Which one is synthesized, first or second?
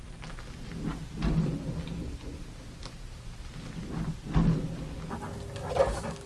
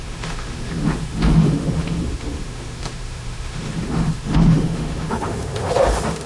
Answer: second